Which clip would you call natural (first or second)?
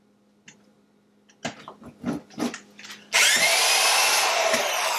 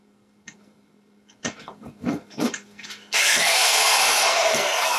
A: first